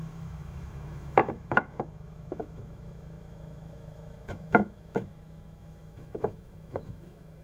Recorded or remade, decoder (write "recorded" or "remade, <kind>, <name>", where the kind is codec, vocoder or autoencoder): remade, autoencoder, DAC-VAE